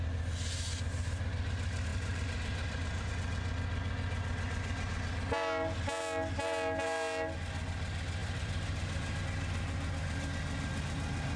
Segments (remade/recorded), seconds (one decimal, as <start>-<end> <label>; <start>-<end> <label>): 0.0-1.9 recorded; 1.9-3.1 remade; 3.1-8.2 recorded; 8.2-9.2 remade; 9.2-11.4 recorded